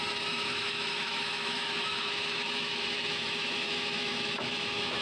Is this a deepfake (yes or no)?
yes